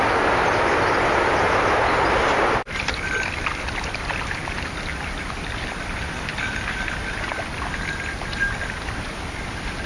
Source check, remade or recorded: recorded